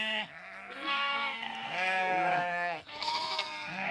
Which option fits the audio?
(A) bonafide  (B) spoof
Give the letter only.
B